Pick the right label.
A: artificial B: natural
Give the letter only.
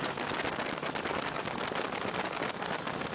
B